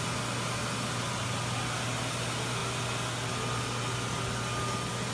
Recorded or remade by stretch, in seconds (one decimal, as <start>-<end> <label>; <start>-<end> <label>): 0.0-5.1 recorded